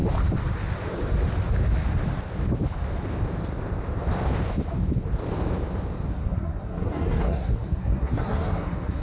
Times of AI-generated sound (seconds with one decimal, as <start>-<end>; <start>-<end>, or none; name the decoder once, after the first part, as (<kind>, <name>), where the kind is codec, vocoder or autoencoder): 6.1-9.0 (codec, SNAC)